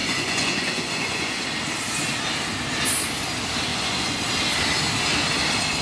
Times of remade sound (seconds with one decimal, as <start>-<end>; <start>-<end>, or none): 0.0-1.4; 3.7-4.2